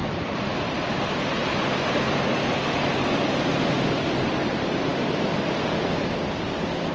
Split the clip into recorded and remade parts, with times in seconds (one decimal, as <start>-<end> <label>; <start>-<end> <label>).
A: 0.0-6.9 recorded